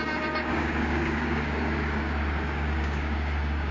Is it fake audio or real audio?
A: fake